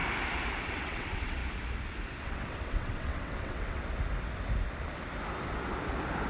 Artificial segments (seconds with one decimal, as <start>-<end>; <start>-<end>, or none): 0.6-1.4; 2.2-3.8